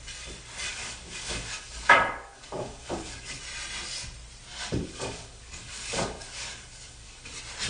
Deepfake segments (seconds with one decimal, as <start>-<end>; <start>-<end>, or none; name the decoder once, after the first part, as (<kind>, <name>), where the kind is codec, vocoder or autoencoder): 0.7-3.4 (codec, DAC); 4.5-7.3